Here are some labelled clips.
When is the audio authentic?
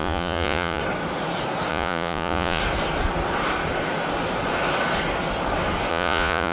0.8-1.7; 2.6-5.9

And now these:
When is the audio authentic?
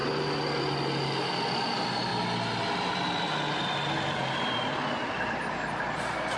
0.0-6.4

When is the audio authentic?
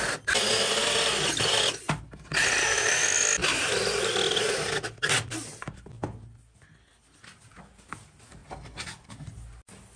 0.0-10.0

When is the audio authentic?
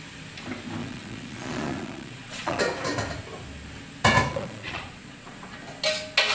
0.0-0.8; 2.6-4.3; 5.3-6.3